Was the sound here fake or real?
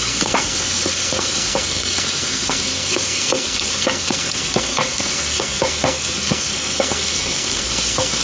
fake